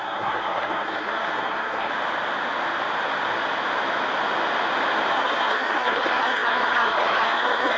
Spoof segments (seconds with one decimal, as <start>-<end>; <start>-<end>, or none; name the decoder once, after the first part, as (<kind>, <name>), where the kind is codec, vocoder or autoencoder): 0.0-1.9 (codec, SNAC); 5.1-7.8